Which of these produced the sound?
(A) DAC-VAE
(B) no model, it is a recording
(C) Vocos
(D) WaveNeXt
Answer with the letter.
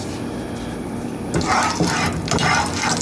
B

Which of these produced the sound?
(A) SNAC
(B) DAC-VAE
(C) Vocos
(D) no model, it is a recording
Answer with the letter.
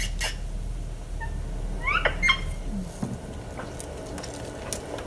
D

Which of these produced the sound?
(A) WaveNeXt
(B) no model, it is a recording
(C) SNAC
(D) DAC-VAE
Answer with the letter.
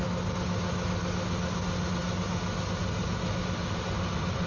B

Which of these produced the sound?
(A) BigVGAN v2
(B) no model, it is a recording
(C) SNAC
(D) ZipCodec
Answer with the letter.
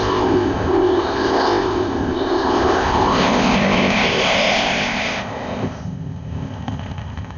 D